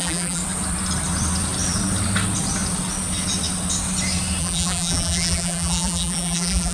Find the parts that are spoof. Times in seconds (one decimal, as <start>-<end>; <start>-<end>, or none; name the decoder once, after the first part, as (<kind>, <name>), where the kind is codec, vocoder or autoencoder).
0.0-0.4 (vocoder, BigVGAN v2); 4.4-6.7